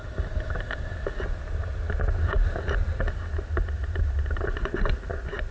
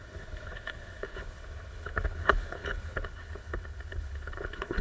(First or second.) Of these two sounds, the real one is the first